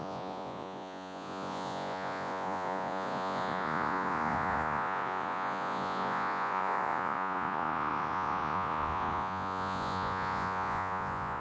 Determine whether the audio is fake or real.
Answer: fake